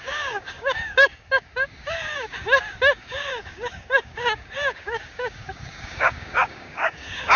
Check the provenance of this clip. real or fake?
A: fake